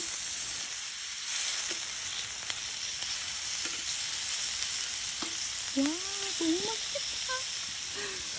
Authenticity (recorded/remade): recorded